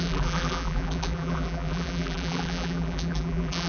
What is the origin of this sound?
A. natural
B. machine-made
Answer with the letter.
B